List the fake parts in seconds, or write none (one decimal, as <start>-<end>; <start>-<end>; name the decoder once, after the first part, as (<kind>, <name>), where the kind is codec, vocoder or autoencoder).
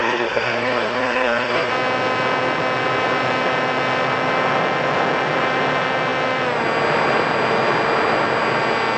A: 0.0-1.7 (codec, SNAC)